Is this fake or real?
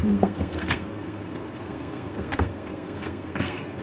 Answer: fake